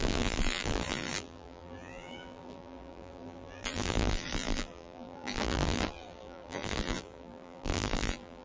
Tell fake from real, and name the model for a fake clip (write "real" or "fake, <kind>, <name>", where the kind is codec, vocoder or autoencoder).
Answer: fake, vocoder, BigVGAN v2